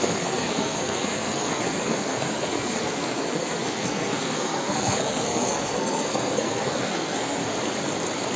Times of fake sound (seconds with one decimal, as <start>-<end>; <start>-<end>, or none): 0.0-7.4